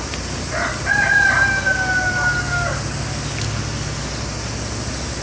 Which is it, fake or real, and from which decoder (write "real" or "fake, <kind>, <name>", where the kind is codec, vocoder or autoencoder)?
real